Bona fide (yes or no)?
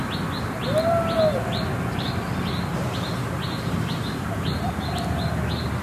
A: yes